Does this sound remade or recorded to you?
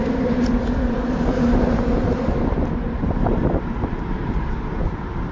recorded